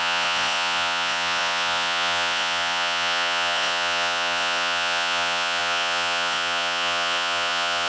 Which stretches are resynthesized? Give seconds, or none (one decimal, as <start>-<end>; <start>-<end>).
0.0-7.9